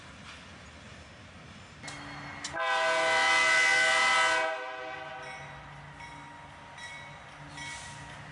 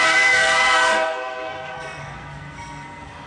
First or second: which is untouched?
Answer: first